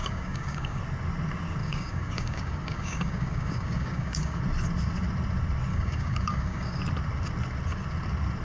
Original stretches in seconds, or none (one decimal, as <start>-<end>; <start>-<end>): 0.8-1.6; 4.4-5.7; 6.8-8.4